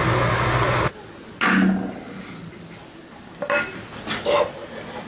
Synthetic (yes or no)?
no